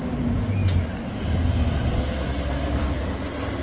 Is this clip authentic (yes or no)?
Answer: yes